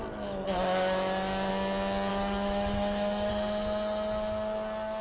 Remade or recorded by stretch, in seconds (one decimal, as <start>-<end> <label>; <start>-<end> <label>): 0.0-2.1 recorded; 2.1-3.3 remade; 3.3-5.0 recorded